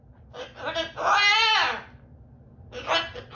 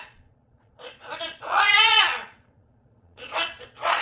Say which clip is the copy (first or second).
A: second